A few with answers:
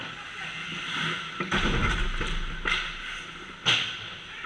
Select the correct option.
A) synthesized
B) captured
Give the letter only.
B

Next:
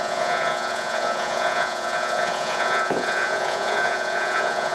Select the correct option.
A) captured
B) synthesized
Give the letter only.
B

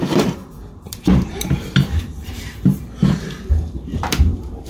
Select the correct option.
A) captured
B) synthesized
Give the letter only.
B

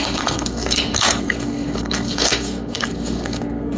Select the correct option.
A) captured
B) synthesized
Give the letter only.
B